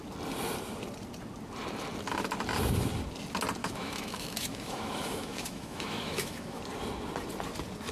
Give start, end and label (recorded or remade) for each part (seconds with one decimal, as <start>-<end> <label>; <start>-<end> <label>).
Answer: 0.0-3.6 recorded; 3.6-6.6 remade; 6.6-7.9 recorded

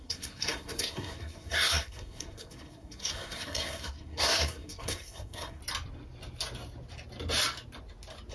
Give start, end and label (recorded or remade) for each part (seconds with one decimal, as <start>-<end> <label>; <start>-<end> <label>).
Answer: 0.0-5.6 remade; 5.6-8.3 recorded

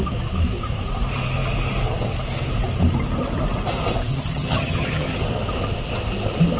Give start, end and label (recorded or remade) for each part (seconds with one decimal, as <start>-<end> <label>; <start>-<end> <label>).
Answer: 0.0-4.1 recorded; 4.1-5.2 remade; 5.2-6.6 recorded